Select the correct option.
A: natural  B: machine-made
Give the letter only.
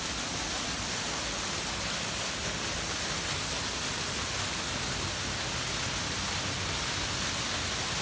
A